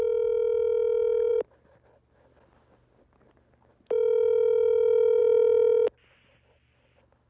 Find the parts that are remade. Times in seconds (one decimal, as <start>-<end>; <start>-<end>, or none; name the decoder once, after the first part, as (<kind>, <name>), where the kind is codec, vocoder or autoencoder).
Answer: none